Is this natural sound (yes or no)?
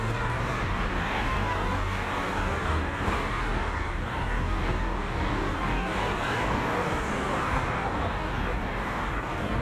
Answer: no